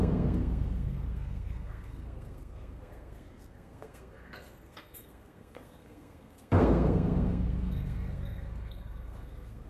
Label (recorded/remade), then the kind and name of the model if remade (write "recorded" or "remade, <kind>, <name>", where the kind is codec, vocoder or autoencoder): remade, codec, SNAC